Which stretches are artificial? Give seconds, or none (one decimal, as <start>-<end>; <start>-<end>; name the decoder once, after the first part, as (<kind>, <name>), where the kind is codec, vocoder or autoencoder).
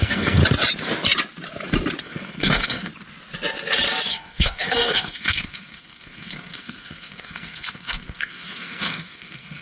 0.0-0.4 (codec, SNAC); 2.0-2.9; 4.1-9.6